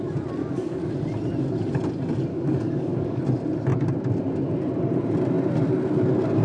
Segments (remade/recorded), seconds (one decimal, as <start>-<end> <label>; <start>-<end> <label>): 0.0-0.4 recorded; 0.4-0.9 remade; 0.9-2.3 recorded; 2.3-3.2 remade; 3.2-6.4 recorded